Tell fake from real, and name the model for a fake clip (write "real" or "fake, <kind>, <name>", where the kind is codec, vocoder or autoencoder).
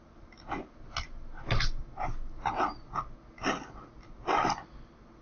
real